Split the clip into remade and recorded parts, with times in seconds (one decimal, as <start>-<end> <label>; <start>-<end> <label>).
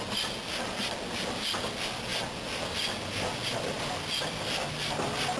0.0-5.4 recorded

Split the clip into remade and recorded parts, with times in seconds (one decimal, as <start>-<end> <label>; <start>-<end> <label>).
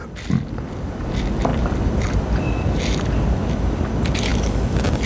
0.0-5.1 recorded